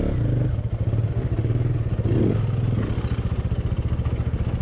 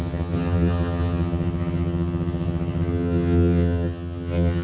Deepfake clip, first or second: second